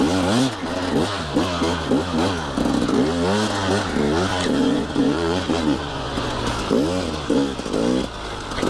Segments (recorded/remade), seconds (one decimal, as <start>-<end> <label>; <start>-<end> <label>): 0.0-4.3 recorded; 4.3-6.4 remade; 6.4-8.7 recorded